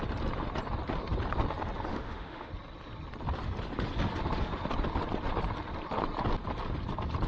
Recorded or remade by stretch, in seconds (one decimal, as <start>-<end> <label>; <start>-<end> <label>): 0.0-1.9 recorded; 1.9-2.5 remade; 2.5-7.3 recorded